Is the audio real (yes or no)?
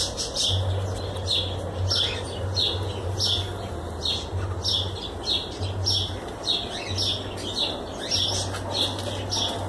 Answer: yes